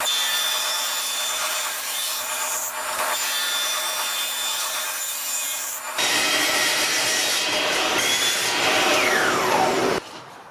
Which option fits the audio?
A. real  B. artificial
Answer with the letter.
B